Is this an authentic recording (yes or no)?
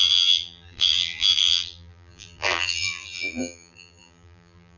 no